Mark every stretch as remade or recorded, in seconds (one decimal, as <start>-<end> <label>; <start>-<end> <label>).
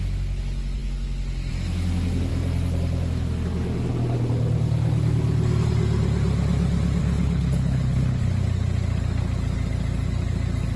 0.0-7.0 recorded; 7.0-8.2 remade; 8.2-10.8 recorded